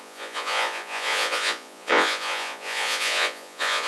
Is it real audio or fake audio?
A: fake